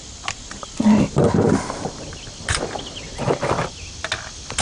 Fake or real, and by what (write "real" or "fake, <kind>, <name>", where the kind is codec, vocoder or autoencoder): real